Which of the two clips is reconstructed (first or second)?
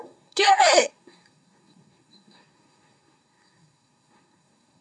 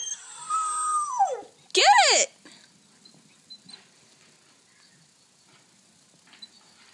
first